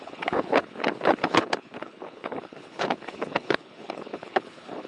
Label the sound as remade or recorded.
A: remade